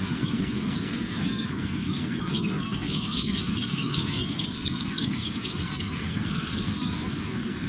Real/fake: fake